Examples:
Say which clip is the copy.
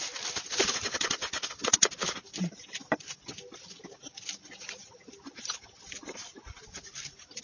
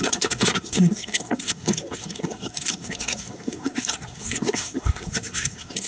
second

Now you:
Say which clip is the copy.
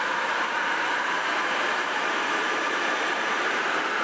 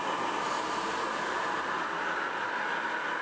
first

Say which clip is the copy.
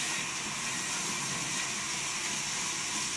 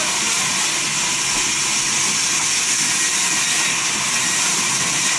second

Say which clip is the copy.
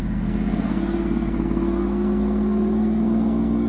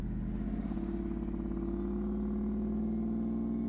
first